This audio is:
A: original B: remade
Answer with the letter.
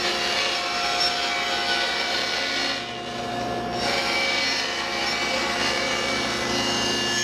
B